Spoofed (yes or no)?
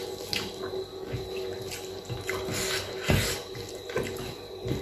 no